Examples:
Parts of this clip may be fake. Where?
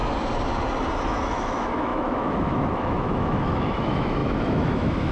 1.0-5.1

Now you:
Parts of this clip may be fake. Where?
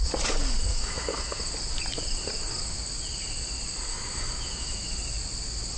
0.7-1.4; 3.9-4.9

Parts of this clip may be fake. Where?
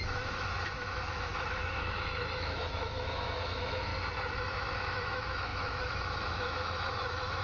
0.0-3.9; 4.4-7.4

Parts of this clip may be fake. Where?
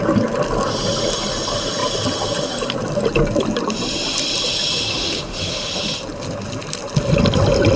4.9-5.7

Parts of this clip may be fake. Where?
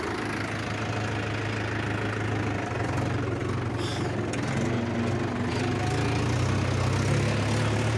none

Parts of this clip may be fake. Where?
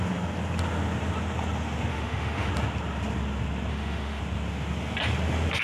1.9-2.5; 3.7-4.2